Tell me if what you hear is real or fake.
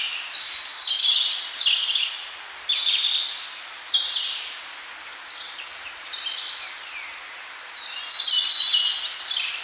real